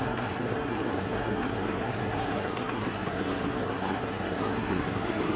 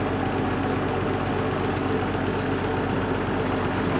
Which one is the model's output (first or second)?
first